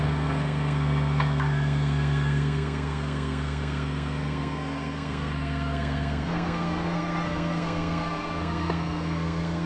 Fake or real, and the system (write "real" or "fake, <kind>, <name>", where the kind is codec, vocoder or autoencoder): fake, codec, SNAC